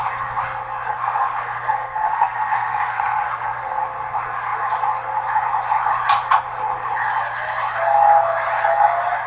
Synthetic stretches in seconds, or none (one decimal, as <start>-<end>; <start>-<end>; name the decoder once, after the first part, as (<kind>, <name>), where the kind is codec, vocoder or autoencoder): 0.9-3.8 (codec, SNAC)